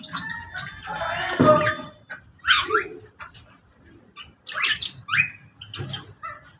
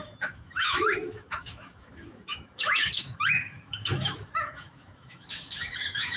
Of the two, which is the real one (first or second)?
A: first